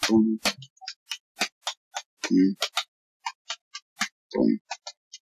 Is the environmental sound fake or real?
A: real